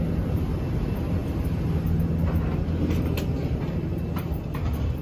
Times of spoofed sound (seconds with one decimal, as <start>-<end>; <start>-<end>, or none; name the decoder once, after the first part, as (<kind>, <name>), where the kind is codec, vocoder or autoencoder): none